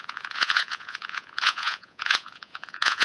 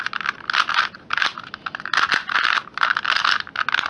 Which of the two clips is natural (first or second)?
second